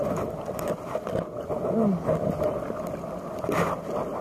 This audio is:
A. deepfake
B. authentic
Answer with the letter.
B